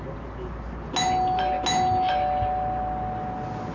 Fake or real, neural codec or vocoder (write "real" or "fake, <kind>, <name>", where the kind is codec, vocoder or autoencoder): real